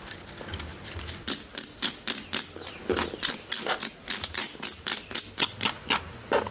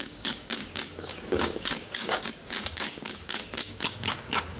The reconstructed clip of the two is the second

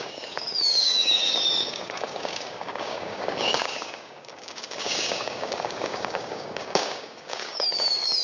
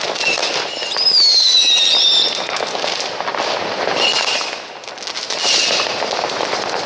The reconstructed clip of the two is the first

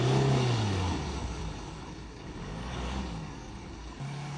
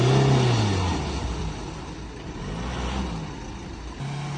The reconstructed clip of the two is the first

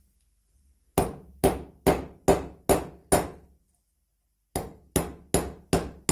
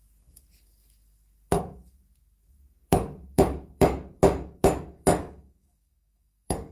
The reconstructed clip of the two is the second